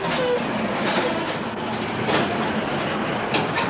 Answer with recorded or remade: recorded